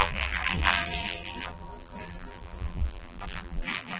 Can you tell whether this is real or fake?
fake